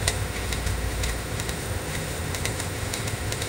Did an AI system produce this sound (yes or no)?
yes